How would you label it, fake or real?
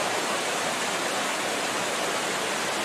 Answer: real